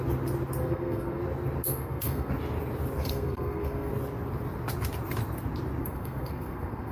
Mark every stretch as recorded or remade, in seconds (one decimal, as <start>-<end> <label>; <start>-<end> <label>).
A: 0.0-0.6 recorded; 0.6-1.2 remade; 1.2-1.7 recorded; 1.7-2.3 remade; 2.3-3.0 recorded; 3.0-3.9 remade; 3.9-5.8 recorded; 5.8-6.9 remade